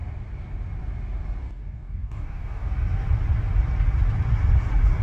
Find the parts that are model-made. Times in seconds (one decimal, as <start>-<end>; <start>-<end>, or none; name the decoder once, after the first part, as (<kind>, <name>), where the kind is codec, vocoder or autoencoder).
1.4-2.7 (codec, DAC)